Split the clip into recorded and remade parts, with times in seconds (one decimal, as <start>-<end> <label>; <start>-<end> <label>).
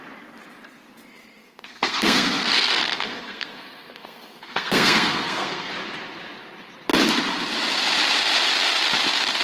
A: 0.0-1.4 recorded; 1.4-5.7 remade; 5.7-9.4 recorded